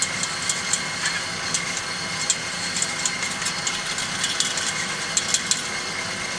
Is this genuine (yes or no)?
yes